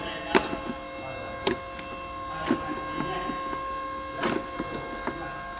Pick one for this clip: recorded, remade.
recorded